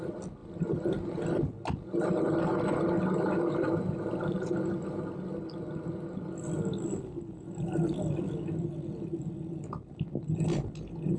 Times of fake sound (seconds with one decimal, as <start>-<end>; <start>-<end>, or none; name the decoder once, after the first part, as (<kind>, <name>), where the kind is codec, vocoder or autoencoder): none